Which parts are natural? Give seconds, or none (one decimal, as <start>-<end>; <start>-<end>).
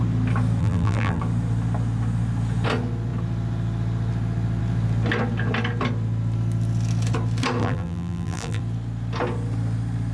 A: 0.0-0.6; 1.2-7.6; 8.6-10.1